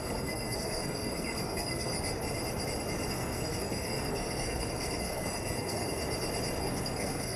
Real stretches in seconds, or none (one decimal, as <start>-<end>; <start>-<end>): 1.9-3.1; 6.0-6.6